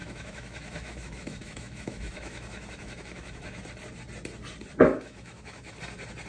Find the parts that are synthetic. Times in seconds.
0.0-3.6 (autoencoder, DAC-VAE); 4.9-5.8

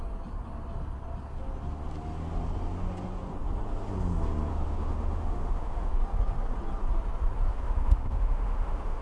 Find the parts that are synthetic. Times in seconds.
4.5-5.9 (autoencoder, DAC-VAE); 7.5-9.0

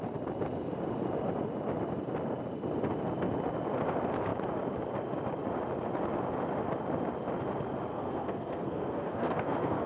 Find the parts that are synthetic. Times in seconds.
7.9-9.9 (codec, SNAC)